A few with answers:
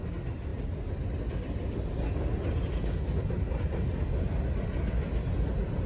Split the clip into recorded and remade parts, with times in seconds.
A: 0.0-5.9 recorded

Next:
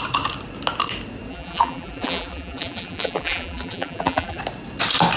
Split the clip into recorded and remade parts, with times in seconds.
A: 0.0-1.3 recorded; 1.3-4.4 remade; 4.4-5.2 recorded

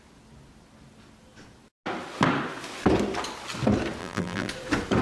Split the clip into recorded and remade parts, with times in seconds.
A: 0.0-4.0 recorded; 4.0-4.5 remade; 4.5-5.0 recorded

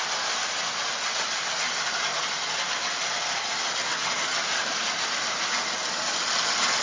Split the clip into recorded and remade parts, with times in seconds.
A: 0.0-2.4 recorded; 2.4-3.6 remade; 3.6-6.8 recorded

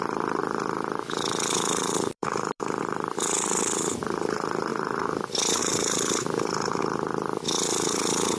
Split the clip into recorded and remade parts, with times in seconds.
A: 0.0-0.4 recorded; 0.4-2.8 remade; 2.8-4.7 recorded; 4.7-6.8 remade; 6.8-8.4 recorded

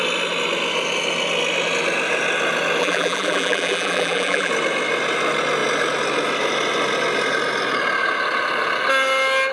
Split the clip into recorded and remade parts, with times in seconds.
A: 0.0-2.8 recorded; 2.8-4.5 remade; 4.5-9.5 recorded